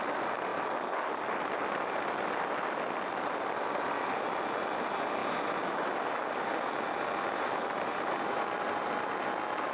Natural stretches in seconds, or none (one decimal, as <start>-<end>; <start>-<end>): 0.0-9.7